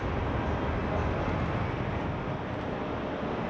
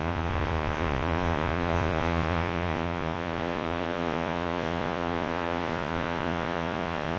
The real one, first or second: first